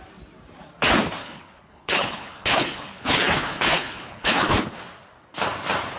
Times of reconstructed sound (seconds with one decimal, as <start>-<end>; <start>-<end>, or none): 1.2-4.8